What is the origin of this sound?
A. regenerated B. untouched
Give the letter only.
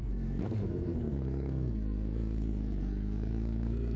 A